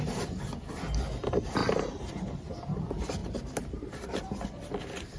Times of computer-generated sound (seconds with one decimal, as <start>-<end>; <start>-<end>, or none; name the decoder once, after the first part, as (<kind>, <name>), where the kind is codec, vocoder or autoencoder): 1.6-2.1 (vocoder, BigVGAN v2); 3.2-4.2